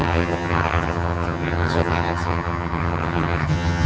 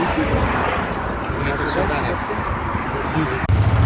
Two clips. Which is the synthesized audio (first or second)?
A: first